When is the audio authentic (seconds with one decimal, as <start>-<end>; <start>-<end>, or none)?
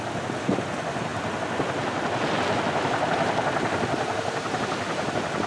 0.0-5.5